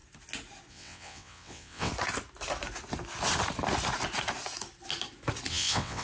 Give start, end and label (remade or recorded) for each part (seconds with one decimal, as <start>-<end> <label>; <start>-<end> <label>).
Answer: 0.0-0.7 recorded; 0.7-1.9 remade; 1.9-5.5 recorded; 5.5-6.0 remade